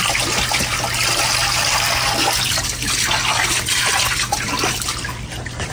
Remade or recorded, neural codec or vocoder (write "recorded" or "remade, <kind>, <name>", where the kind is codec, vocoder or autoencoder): recorded